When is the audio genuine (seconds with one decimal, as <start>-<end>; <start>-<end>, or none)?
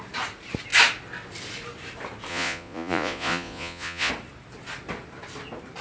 0.0-2.3; 4.1-5.8